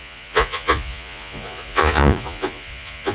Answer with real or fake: fake